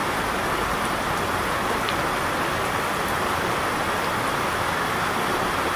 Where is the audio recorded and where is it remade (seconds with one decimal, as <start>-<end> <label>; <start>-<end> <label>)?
0.0-5.8 recorded